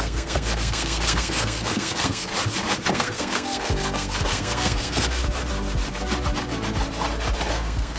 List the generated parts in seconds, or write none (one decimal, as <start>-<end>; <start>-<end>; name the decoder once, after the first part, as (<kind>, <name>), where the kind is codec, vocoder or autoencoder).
0.0-2.3 (codec, SNAC); 2.9-5.2; 7.5-8.0

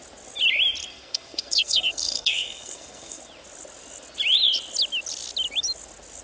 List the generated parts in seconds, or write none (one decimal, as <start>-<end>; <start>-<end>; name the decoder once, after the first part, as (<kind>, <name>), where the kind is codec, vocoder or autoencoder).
0.8-3.2 (codec, SNAC)

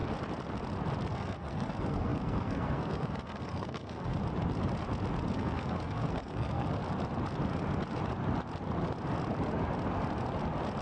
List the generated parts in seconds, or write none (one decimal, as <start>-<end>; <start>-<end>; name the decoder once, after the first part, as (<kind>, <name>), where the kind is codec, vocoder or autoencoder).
1.1-4.1 (codec, SNAC); 5.3-6.8

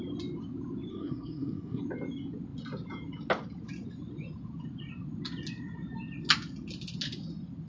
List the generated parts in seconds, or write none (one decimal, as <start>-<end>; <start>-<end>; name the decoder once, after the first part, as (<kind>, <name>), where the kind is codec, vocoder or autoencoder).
0.9-1.8 (codec, SNAC)

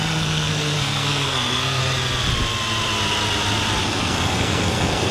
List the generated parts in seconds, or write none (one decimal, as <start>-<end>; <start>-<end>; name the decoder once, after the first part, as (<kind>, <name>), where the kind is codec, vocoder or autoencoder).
0.0-1.8 (codec, SNAC); 3.8-5.1